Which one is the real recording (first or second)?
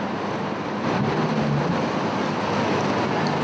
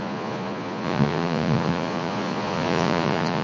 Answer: first